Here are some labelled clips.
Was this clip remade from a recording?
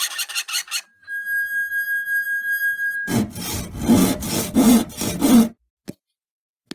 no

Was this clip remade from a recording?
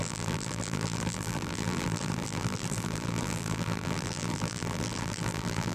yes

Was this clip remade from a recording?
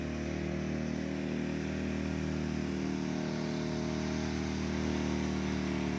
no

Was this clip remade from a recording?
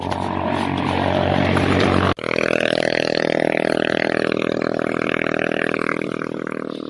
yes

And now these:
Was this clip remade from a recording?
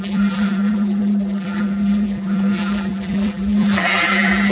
yes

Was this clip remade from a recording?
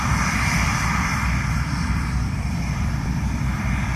yes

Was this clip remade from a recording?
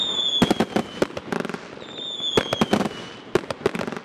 no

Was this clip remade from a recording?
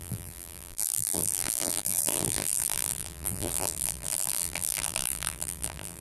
yes